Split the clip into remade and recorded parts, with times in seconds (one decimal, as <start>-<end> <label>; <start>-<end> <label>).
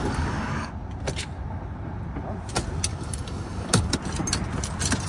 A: 0.0-0.7 remade; 0.7-2.9 recorded; 2.9-3.9 remade; 3.9-5.1 recorded